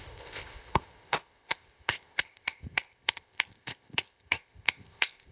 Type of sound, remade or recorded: remade